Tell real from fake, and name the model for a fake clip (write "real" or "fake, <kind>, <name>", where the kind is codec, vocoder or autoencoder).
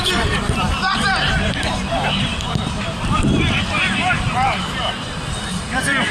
fake, vocoder, BigVGAN v2